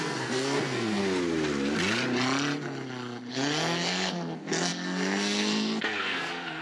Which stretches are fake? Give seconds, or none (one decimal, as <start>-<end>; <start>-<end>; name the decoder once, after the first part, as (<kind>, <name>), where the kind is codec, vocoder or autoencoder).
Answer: 0.0-1.0 (codec, SNAC); 3.3-6.6